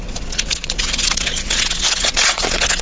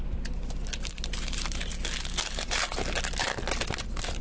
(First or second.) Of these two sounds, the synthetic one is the first